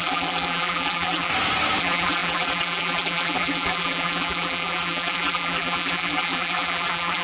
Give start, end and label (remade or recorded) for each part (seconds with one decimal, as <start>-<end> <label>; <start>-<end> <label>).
0.0-1.3 remade; 1.3-1.8 recorded; 1.8-7.2 remade